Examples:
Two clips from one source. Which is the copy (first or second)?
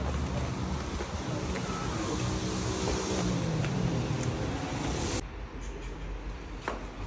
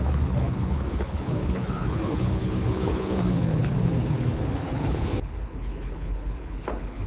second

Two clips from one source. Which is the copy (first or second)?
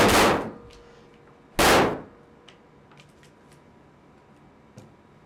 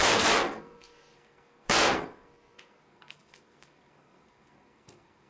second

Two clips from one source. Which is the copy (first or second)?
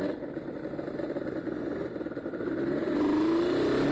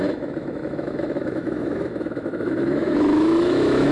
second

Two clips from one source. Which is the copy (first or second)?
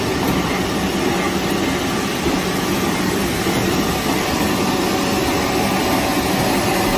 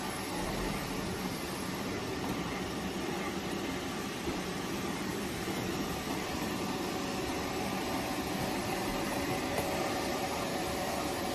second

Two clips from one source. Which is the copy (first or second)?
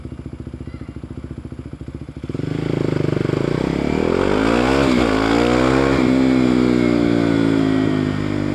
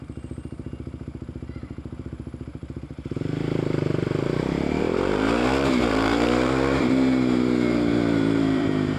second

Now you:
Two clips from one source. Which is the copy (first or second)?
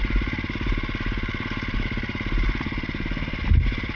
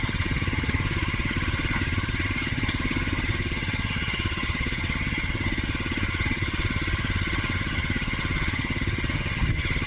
second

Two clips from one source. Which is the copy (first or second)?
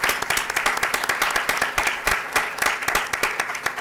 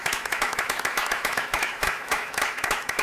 second